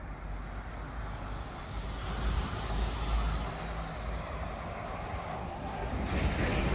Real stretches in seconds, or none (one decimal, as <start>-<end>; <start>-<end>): 0.0-5.3; 5.9-6.7